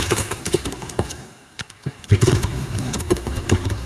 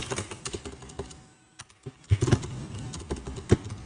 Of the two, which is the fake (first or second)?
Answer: first